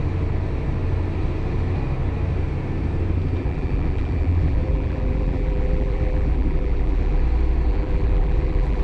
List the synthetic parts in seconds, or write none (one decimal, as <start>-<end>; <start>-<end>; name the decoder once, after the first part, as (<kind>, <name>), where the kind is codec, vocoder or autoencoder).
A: 3.4-7.2 (vocoder, BigVGAN v2); 7.7-8.8